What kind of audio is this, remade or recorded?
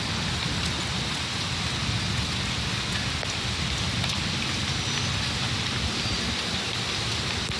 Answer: recorded